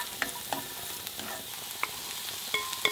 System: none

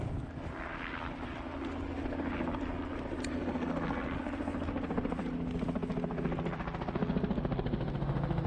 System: none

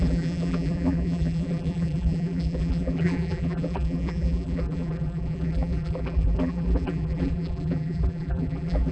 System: vocoder, BigVGAN v2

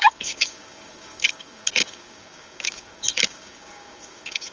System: codec, DAC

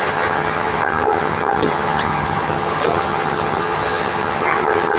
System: vocoder, HiFi-GAN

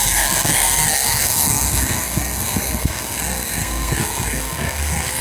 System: codec, SNAC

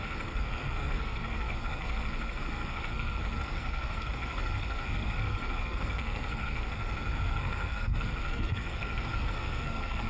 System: codec, SNAC